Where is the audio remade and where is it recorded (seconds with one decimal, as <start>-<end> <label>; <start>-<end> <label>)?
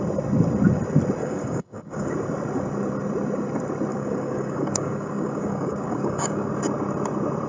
0.0-1.2 recorded; 1.2-2.1 remade; 2.1-3.9 recorded; 3.9-6.5 remade; 6.5-7.5 recorded